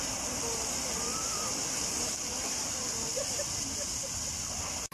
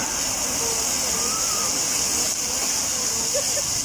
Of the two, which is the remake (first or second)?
first